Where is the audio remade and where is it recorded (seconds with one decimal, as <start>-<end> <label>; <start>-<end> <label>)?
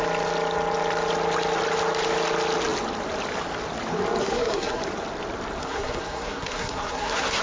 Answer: 0.0-4.2 recorded; 4.2-4.8 remade; 4.8-5.6 recorded; 5.6-7.4 remade